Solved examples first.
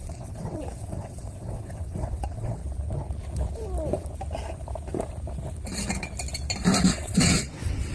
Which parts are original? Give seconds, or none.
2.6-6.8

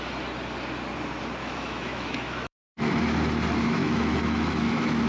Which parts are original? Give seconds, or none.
0.0-1.4; 2.9-3.8

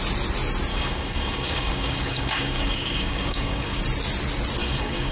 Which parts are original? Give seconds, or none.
0.0-0.7; 3.8-4.6

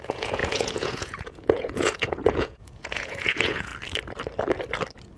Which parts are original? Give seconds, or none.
3.7-5.2

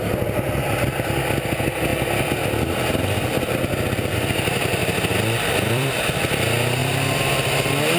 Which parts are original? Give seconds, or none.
0.0-1.9; 6.0-6.8; 7.5-8.0

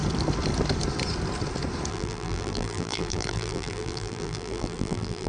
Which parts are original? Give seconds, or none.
0.0-1.9

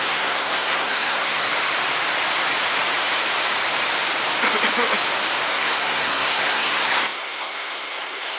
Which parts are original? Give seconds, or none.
1.5-5.5

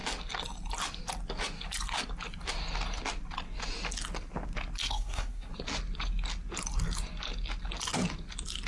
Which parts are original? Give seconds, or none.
0.0-4.8; 5.5-8.7